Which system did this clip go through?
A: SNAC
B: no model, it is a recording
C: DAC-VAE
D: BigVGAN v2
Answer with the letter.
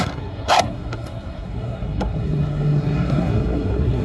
A